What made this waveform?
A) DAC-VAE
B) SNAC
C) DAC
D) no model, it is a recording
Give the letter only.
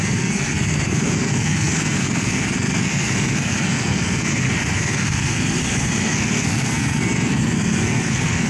B